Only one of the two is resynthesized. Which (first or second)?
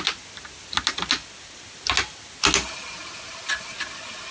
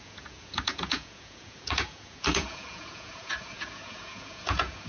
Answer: second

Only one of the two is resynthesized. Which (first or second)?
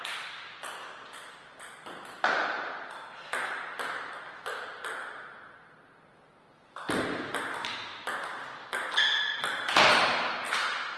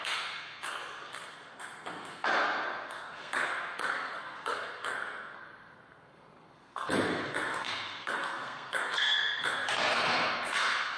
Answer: second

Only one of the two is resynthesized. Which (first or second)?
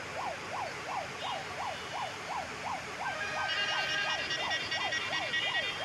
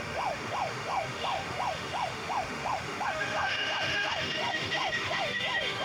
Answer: second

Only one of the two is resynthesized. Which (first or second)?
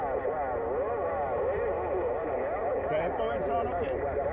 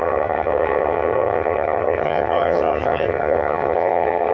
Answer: second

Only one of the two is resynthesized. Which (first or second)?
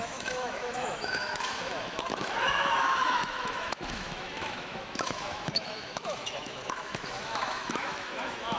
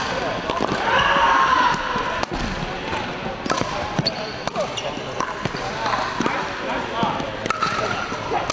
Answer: first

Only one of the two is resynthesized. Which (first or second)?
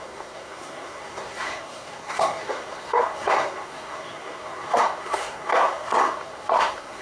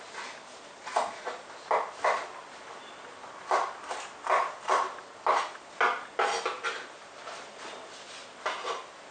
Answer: first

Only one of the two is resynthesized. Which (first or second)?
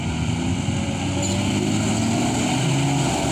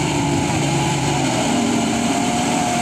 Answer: second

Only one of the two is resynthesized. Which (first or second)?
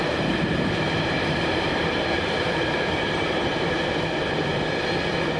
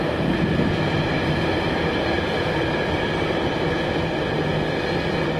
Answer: first